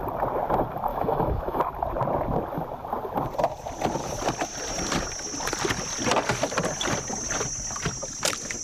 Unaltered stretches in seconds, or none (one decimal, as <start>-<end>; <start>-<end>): 0.0-0.9; 1.6-8.6